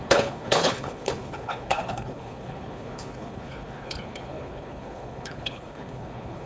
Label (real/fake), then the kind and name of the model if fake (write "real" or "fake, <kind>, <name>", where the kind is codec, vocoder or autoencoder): fake, codec, HILCodec